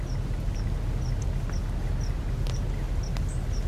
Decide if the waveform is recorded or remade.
recorded